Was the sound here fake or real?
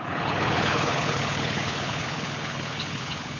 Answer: fake